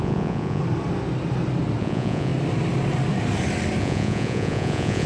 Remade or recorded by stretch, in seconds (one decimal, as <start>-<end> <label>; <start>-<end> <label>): 0.0-0.6 remade; 0.6-1.8 recorded; 1.8-2.3 remade; 2.3-3.8 recorded; 3.8-5.1 remade